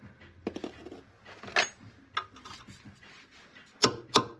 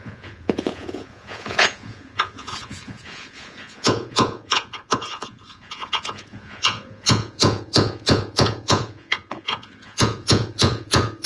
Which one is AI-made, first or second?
second